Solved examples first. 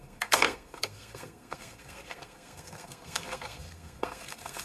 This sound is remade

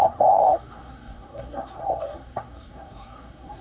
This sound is remade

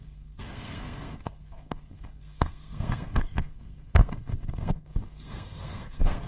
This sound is remade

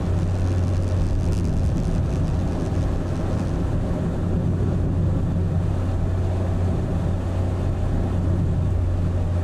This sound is recorded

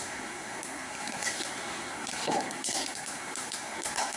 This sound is remade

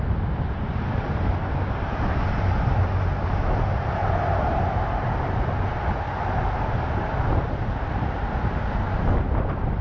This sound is recorded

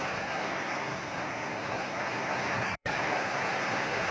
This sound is remade